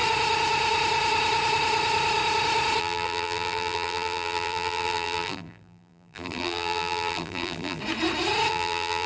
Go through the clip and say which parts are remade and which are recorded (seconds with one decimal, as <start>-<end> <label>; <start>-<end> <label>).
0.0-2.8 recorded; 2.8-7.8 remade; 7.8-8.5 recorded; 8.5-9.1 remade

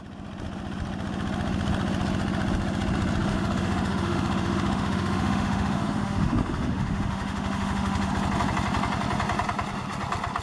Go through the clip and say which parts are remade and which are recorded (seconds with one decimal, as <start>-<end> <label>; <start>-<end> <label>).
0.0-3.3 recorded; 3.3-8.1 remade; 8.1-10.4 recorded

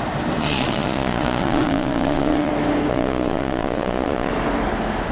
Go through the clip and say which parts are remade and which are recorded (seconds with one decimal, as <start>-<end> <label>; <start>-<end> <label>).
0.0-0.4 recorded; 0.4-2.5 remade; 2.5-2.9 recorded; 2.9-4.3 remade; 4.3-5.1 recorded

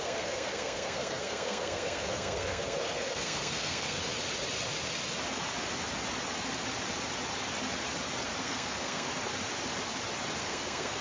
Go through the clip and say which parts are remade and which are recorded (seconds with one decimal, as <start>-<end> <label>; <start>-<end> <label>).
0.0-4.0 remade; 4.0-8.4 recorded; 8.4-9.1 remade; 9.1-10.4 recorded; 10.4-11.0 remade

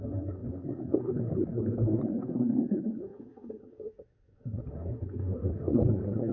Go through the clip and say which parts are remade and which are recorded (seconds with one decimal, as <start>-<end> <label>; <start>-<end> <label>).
0.0-6.3 remade